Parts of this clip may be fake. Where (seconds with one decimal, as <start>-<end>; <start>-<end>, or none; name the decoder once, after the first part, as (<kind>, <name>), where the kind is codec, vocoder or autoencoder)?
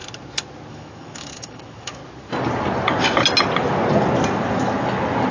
0.7-2.0 (autoencoder, DAC-VAE)